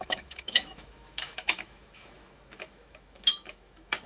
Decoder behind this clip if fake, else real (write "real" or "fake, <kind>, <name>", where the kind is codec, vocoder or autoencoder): fake, autoencoder, DAC-VAE